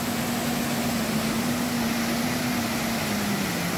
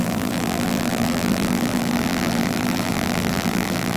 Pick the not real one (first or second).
second